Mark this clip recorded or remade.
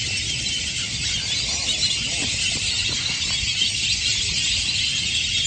recorded